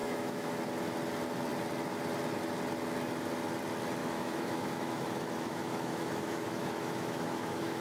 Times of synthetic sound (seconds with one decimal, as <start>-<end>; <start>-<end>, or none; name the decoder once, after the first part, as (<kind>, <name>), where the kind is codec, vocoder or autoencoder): 0.0-0.6 (autoencoder, DAC-VAE); 4.0-7.8